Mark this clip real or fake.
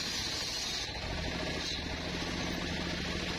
real